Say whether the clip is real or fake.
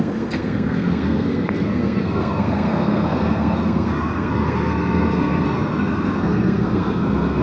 fake